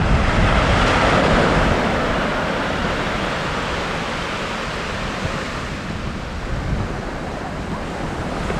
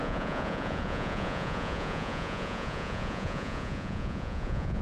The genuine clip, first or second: first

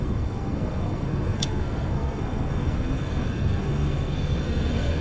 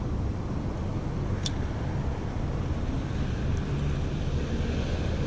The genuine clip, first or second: second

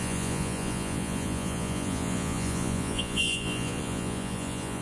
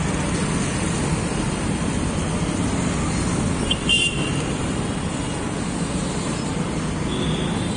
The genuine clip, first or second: second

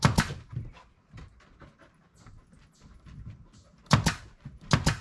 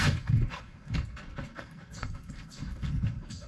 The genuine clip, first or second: first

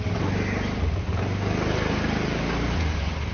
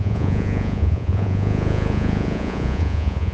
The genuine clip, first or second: first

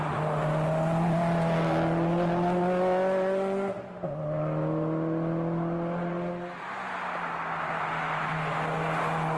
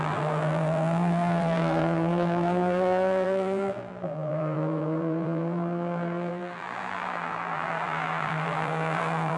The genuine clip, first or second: first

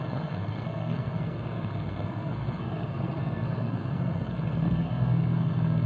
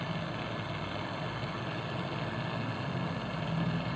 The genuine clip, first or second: second